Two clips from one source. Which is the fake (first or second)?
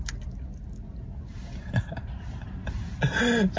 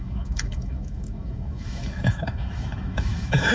second